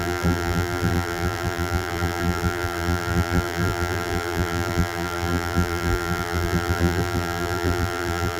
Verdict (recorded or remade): remade